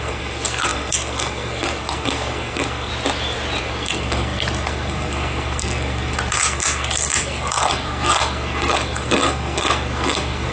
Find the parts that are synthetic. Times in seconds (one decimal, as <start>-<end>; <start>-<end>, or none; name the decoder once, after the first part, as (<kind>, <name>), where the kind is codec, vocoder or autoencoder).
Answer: 0.0-2.9 (codec, SNAC); 3.6-10.5